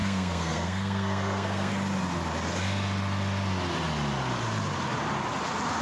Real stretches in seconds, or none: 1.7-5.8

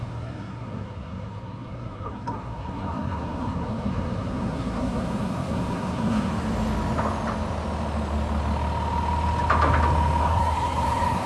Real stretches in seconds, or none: 6.3-10.2

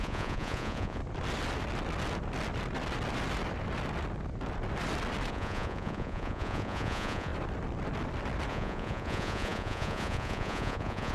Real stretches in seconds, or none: 1.0-5.3; 7.3-8.5

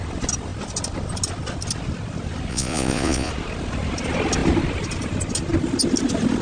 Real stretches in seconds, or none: 0.0-2.5; 3.3-6.4

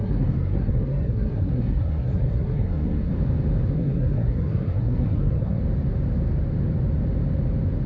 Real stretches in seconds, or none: 3.1-3.7; 5.6-7.9